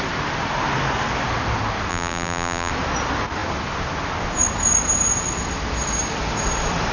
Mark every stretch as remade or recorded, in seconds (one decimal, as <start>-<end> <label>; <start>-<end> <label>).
0.0-1.9 recorded; 1.9-2.7 remade; 2.7-6.9 recorded

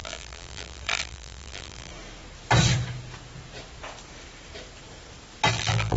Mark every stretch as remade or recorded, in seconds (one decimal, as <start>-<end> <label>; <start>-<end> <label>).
0.0-1.9 remade; 1.9-5.5 recorded; 5.5-6.0 remade

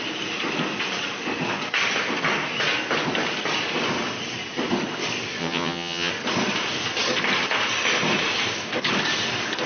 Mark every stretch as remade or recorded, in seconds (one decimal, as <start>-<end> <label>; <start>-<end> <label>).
0.0-5.4 recorded; 5.4-6.1 remade; 6.1-9.7 recorded

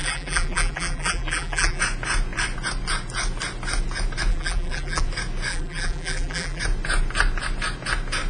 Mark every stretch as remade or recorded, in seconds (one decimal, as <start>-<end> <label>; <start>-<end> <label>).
0.0-1.8 remade; 1.8-4.3 recorded; 4.3-5.0 remade; 5.0-5.5 recorded; 5.5-6.6 remade; 6.6-8.3 recorded

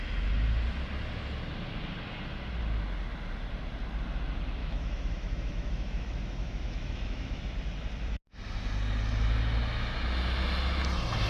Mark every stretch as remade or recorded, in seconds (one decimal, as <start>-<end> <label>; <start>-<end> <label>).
0.0-4.6 recorded; 4.6-7.4 remade; 7.4-11.3 recorded